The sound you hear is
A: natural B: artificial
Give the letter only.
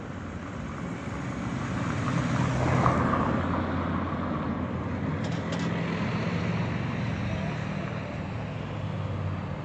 A